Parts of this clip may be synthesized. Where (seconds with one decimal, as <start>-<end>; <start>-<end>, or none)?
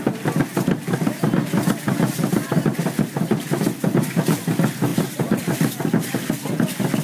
4.9-5.4